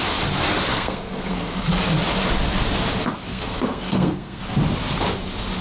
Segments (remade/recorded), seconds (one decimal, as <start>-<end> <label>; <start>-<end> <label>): 0.0-0.7 recorded; 0.7-1.7 remade; 1.7-3.3 recorded; 3.3-4.4 remade; 4.4-5.6 recorded